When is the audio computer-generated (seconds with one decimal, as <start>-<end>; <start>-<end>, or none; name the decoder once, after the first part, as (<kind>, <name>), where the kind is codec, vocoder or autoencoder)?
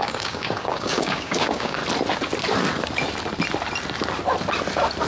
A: 0.0-1.8 (codec, DAC)